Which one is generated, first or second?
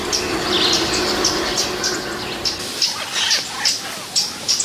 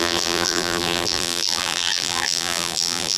second